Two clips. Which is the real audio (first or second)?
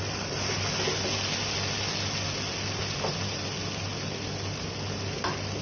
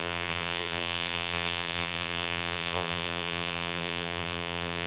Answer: first